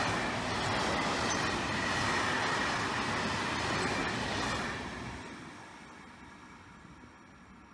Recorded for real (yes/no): yes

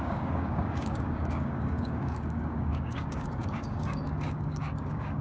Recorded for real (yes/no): no